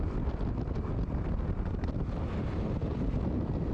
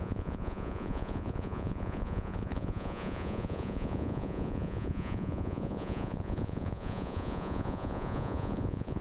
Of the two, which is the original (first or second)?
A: first